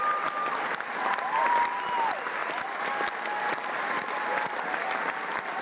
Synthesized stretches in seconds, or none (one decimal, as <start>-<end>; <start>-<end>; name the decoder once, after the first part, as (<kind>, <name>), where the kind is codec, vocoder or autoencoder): none